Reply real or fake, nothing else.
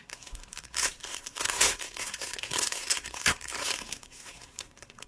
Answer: fake